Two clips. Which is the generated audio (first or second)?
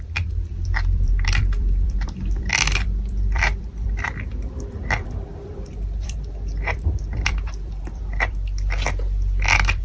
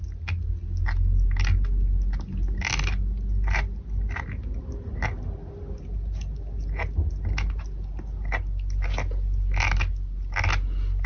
first